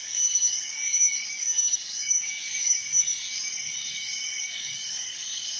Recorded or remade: remade